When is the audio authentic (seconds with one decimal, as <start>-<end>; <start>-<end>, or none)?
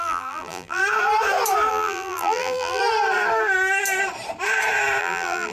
0.8-1.7; 2.8-5.0